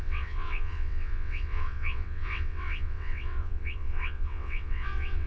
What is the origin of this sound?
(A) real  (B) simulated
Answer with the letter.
B